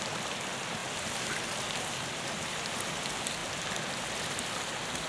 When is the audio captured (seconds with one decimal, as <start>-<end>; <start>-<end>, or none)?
0.0-5.1